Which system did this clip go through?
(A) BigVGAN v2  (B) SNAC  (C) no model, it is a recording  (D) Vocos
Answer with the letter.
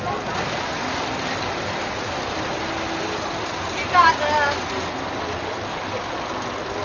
C